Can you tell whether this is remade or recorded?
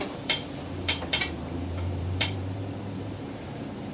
remade